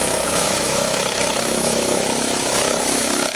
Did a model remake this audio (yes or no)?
yes